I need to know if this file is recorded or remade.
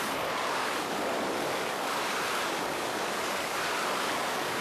remade